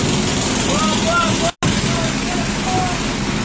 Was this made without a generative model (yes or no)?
yes